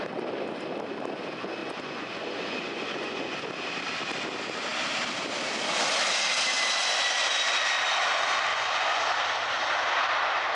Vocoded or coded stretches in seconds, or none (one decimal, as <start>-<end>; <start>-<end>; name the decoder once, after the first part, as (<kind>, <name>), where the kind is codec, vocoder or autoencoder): 1.6-3.5 (vocoder, Vocos); 8.5-9.0